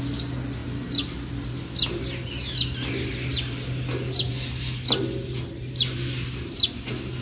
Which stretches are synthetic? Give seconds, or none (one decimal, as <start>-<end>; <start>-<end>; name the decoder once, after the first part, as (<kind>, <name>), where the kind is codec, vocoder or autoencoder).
none